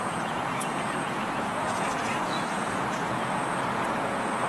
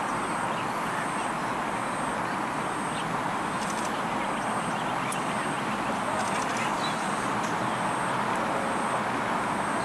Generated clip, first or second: first